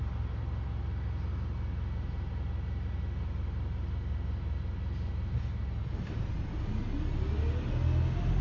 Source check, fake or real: real